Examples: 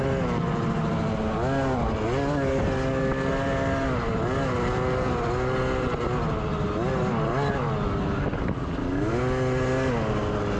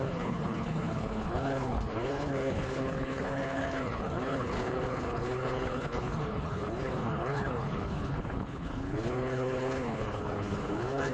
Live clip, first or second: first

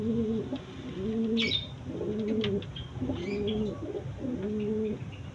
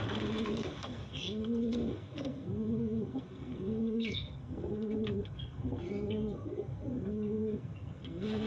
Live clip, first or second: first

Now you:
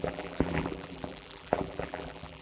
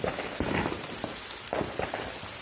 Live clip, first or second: second